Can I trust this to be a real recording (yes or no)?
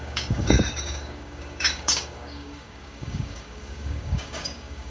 no